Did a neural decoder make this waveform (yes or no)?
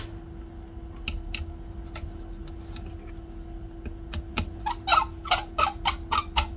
no